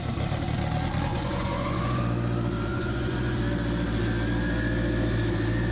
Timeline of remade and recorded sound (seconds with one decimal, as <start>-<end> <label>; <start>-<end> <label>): 0.0-1.1 recorded; 1.1-2.0 remade; 2.0-2.7 recorded; 2.7-3.4 remade; 3.4-5.7 recorded